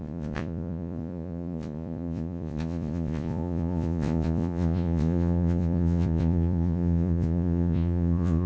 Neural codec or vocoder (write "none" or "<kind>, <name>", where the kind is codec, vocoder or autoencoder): vocoder, Vocos